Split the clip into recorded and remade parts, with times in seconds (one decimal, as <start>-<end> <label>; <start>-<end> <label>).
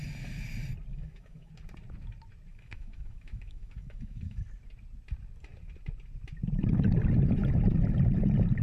0.0-0.9 recorded; 0.9-1.5 remade; 1.5-2.5 recorded; 2.5-4.4 remade; 4.4-8.6 recorded